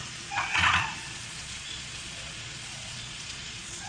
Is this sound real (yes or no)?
no